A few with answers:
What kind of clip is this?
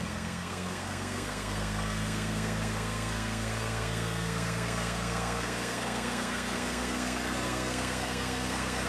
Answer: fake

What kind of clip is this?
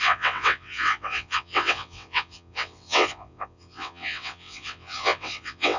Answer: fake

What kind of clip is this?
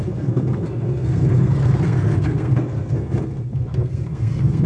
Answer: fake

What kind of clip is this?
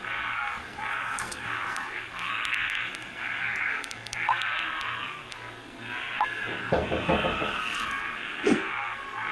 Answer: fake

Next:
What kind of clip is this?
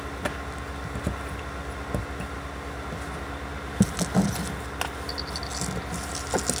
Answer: real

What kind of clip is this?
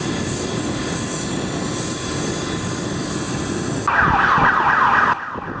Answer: real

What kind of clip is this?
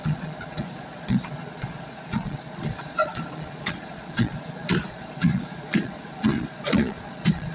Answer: fake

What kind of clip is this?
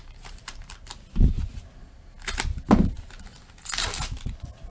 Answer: real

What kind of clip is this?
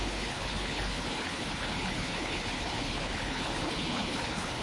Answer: fake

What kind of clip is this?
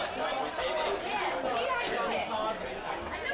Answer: real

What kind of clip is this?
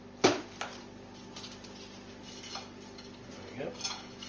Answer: real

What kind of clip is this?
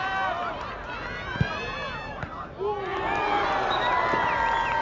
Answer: real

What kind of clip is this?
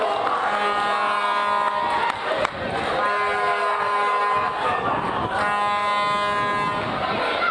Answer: real